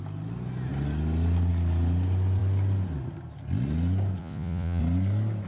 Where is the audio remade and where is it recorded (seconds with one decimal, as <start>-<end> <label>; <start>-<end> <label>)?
0.0-4.2 recorded; 4.2-4.8 remade; 4.8-5.5 recorded